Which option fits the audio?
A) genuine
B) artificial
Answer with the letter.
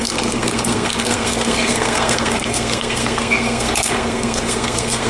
B